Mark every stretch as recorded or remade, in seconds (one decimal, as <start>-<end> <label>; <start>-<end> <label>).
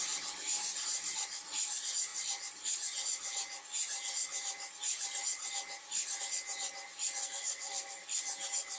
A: 0.0-7.2 recorded; 7.2-8.0 remade; 8.0-8.8 recorded